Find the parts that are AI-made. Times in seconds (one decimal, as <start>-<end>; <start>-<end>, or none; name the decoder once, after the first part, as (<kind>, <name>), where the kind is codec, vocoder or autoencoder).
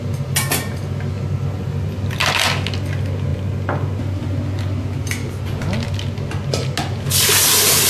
none